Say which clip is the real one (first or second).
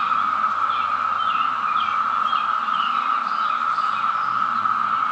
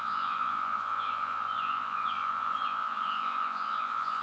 first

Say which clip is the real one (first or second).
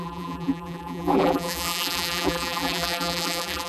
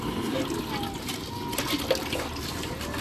second